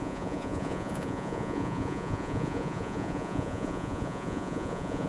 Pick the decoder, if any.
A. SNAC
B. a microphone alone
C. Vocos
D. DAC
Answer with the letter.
C